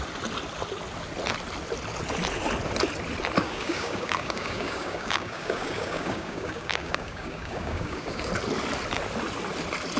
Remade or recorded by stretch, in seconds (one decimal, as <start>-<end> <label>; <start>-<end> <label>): 0.0-3.4 recorded; 3.4-8.3 remade; 8.3-10.0 recorded